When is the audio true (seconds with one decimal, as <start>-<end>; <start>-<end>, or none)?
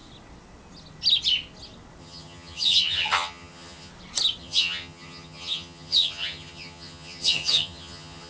0.0-2.0; 3.9-4.4